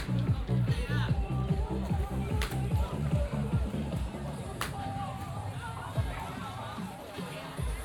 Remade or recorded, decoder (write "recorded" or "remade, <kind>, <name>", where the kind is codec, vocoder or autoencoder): remade, vocoder, BigVGAN v2